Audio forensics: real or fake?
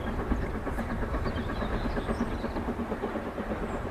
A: fake